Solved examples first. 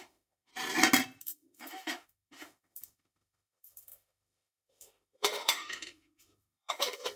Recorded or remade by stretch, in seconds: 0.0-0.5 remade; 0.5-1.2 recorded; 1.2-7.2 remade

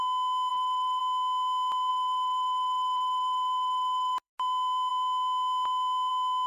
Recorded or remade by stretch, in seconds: 0.0-0.5 recorded; 0.5-1.0 remade; 1.0-1.9 recorded; 1.9-4.3 remade; 4.3-6.5 recorded